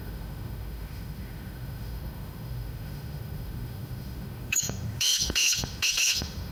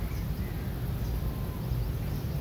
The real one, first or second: second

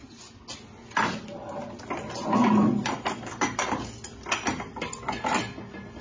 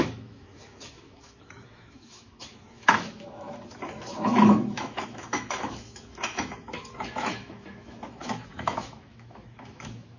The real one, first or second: first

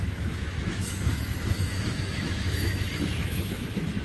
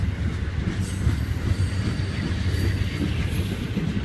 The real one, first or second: second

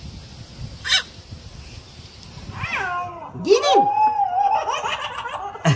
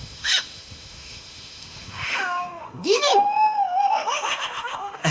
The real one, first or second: first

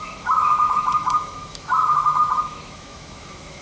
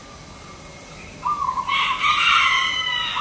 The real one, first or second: second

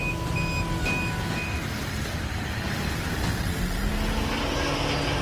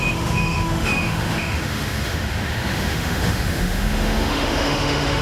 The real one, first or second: first